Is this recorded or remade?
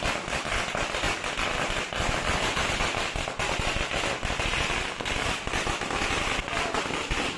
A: recorded